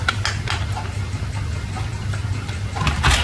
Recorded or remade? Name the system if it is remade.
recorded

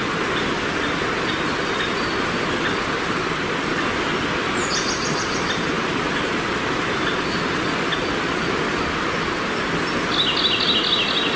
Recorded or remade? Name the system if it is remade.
recorded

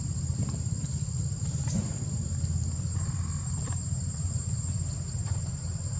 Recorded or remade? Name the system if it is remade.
recorded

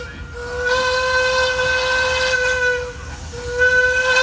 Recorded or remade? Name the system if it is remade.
recorded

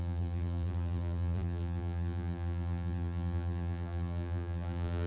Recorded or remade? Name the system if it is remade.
remade, vocoder, BigVGAN v2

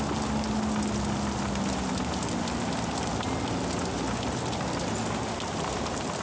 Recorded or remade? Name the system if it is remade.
recorded